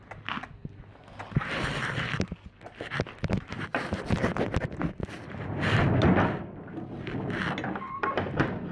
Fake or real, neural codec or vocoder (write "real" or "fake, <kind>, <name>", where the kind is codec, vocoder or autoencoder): real